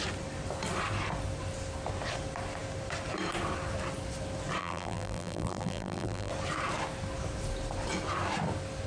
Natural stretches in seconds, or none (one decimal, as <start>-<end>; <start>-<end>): 0.0-4.6; 6.3-8.9